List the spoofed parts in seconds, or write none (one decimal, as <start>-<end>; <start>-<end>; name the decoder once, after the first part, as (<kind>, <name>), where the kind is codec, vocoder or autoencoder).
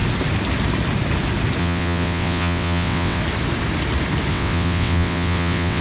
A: 1.6-3.2 (vocoder, WaveNeXt); 4.3-5.8